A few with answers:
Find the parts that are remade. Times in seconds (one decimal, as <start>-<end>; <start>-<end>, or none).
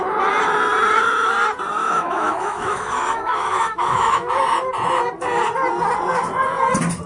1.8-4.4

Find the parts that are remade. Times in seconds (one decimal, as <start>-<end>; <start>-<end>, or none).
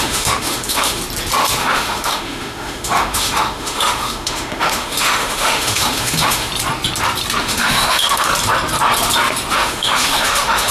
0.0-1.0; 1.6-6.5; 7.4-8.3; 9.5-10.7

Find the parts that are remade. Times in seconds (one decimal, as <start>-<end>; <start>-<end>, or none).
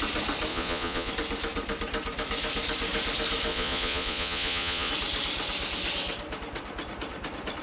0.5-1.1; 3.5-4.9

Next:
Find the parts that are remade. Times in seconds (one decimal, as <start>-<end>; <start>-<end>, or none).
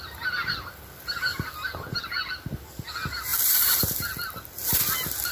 1.3-1.9; 3.3-3.9